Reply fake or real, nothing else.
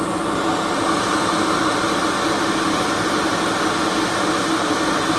real